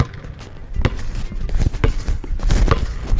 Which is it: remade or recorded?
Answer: recorded